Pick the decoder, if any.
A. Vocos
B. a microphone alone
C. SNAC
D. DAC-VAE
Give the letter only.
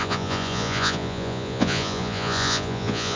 A